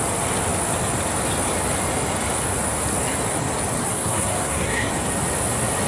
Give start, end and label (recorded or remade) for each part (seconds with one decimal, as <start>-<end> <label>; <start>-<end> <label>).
0.0-3.8 recorded; 3.8-4.9 remade; 4.9-5.9 recorded